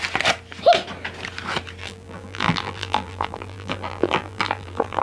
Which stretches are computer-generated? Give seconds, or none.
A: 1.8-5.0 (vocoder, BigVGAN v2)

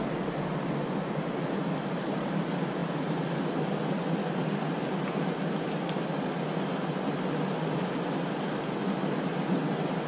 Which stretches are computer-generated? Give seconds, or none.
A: none